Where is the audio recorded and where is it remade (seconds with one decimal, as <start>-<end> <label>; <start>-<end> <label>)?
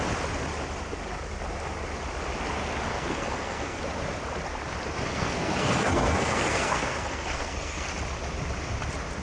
0.0-2.9 recorded; 2.9-3.8 remade; 3.8-5.1 recorded; 5.1-7.9 remade; 7.9-9.2 recorded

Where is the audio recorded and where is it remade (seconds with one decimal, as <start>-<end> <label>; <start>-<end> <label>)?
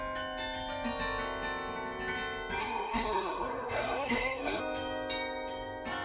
0.0-2.6 recorded; 2.6-4.6 remade; 4.6-6.0 recorded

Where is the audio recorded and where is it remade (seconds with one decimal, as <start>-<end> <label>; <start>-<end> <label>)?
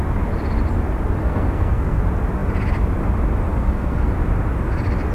0.0-1.2 recorded; 1.2-2.0 remade; 2.0-3.5 recorded; 3.5-4.1 remade; 4.1-5.1 recorded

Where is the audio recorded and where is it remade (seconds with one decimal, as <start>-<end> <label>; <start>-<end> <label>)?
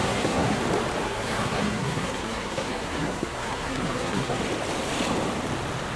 0.0-0.6 remade; 0.6-1.0 recorded; 1.0-4.4 remade; 4.4-6.0 recorded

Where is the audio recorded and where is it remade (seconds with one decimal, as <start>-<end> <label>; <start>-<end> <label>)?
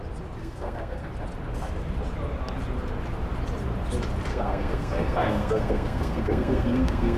0.0-0.4 recorded; 0.4-1.1 remade; 1.1-4.3 recorded; 4.3-7.2 remade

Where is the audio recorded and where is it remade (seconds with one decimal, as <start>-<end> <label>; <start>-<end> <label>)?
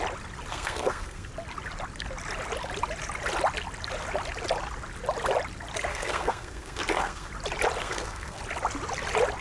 0.0-0.5 recorded; 0.5-1.3 remade; 1.3-5.9 recorded; 5.9-7.3 remade; 7.3-7.8 recorded; 7.8-8.4 remade; 8.4-9.4 recorded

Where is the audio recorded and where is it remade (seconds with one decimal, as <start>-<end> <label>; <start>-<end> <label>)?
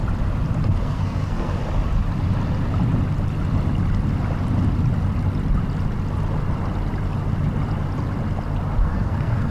0.0-0.8 recorded; 0.8-1.6 remade; 1.6-8.8 recorded; 8.8-9.5 remade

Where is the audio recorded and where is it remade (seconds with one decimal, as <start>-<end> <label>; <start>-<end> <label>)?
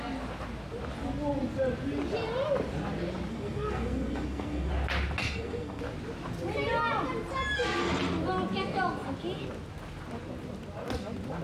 0.0-3.3 recorded; 3.3-4.7 remade; 4.7-5.2 recorded; 5.2-5.8 remade; 5.8-11.4 recorded